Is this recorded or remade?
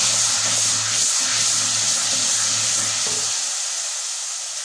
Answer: recorded